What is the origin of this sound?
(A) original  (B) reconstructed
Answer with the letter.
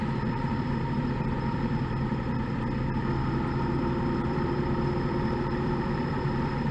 B